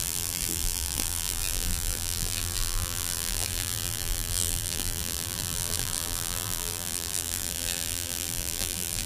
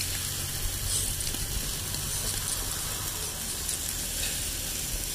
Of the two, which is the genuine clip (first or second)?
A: second